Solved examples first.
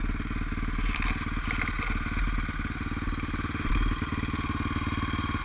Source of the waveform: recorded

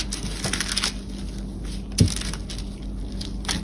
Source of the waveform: recorded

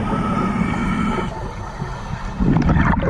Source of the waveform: recorded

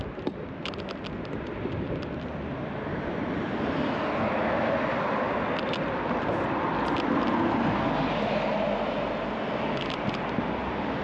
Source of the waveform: recorded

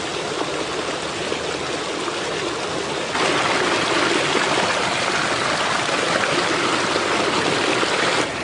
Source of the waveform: recorded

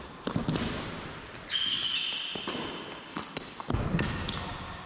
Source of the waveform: recorded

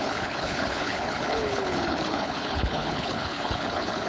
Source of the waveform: remade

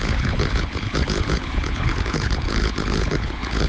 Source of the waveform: remade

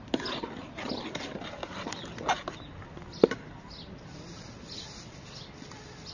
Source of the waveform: recorded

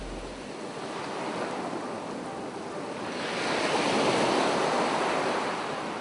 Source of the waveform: recorded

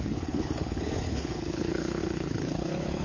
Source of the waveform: remade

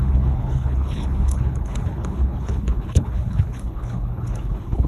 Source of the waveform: remade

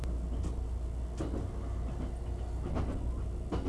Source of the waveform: recorded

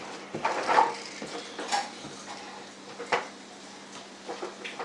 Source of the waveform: recorded